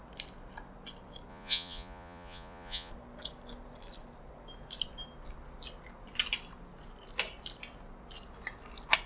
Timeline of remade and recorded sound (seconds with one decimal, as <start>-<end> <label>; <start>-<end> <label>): 0.0-1.3 recorded; 1.3-2.9 remade; 2.9-9.1 recorded